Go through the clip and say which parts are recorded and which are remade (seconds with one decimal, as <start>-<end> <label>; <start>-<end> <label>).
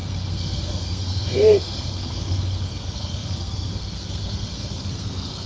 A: 0.0-5.5 remade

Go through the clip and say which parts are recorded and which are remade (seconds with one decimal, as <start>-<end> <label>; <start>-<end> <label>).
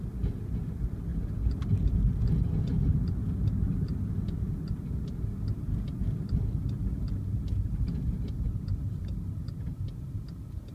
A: 0.0-10.7 recorded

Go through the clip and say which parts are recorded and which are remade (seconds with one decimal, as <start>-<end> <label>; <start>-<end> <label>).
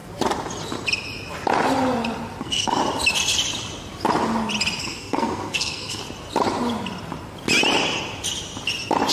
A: 0.0-2.4 recorded; 2.4-2.8 remade; 2.8-4.8 recorded; 4.8-6.0 remade; 6.0-9.1 recorded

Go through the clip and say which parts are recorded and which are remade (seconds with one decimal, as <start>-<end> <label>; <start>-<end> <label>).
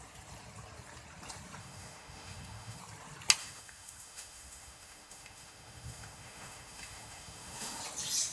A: 0.0-1.6 recorded; 1.6-2.8 remade; 2.8-3.4 recorded; 3.4-7.8 remade; 7.8-8.3 recorded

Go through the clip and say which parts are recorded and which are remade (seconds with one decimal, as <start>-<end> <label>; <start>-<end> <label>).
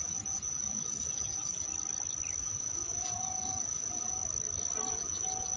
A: 0.0-1.7 remade; 1.7-2.4 recorded; 2.4-4.2 remade; 4.2-4.9 recorded; 4.9-5.6 remade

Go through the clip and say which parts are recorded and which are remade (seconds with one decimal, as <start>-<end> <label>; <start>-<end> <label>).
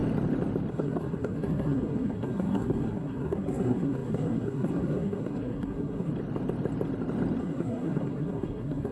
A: 0.0-0.7 recorded; 0.7-6.1 remade; 6.1-7.4 recorded; 7.4-8.9 remade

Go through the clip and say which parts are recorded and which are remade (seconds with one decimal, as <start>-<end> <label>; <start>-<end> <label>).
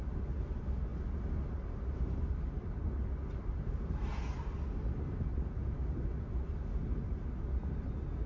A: 0.0-8.3 recorded